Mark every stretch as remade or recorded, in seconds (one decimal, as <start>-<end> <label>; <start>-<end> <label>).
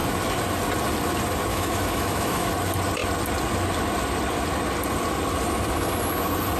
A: 0.0-1.5 recorded; 1.5-2.5 remade; 2.5-6.6 recorded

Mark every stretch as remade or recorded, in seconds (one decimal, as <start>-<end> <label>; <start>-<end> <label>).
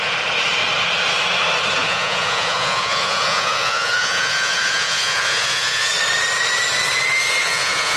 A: 0.0-1.8 recorded; 1.8-5.9 remade; 5.9-7.4 recorded; 7.4-8.0 remade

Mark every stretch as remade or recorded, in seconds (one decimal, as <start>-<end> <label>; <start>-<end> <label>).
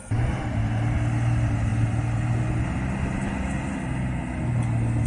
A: 0.0-5.1 recorded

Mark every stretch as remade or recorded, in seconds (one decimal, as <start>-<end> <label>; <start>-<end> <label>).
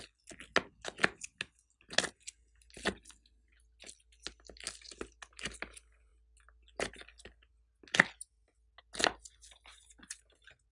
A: 0.0-10.7 recorded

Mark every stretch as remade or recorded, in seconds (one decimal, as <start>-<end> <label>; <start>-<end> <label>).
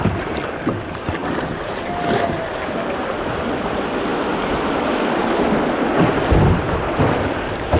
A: 0.0-1.2 remade; 1.2-2.5 recorded; 2.5-4.1 remade; 4.1-6.9 recorded; 6.9-7.8 remade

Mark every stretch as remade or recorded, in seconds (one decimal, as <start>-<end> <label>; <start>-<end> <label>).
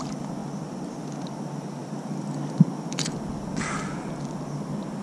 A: 0.0-1.8 recorded; 1.8-3.4 remade; 3.4-5.0 recorded